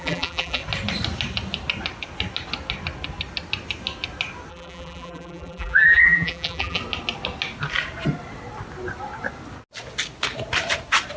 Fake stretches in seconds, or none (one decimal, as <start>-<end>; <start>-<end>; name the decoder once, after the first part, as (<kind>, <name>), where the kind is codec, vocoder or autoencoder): 0.0-0.6 (vocoder, BigVGAN v2); 4.5-6.8